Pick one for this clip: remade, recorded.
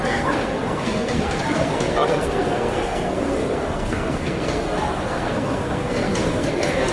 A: remade